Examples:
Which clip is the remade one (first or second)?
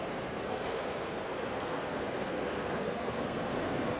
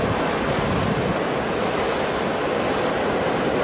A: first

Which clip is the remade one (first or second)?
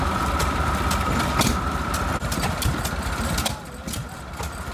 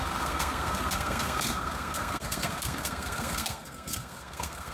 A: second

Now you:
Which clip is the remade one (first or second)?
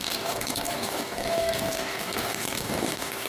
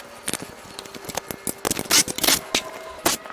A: first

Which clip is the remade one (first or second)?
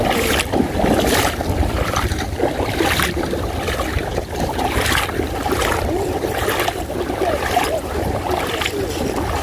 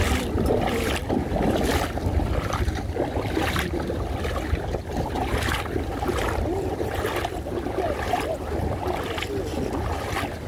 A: first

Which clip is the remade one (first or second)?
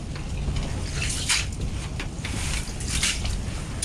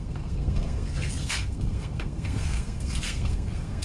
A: second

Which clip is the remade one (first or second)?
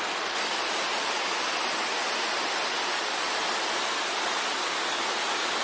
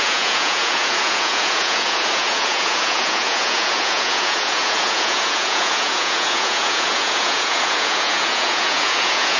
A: second